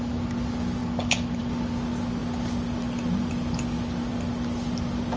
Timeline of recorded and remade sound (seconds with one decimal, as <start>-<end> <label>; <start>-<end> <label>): 0.0-5.2 recorded